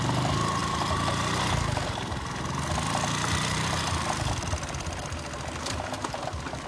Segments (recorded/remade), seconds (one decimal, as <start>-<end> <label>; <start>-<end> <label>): 0.0-6.7 recorded